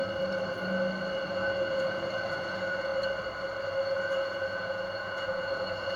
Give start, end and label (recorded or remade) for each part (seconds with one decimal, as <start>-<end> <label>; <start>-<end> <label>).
0.0-1.3 recorded; 1.3-2.9 remade; 2.9-3.8 recorded; 3.8-6.0 remade